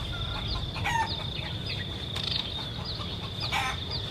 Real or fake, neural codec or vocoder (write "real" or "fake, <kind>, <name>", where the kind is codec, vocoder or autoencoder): fake, vocoder, BigVGAN v2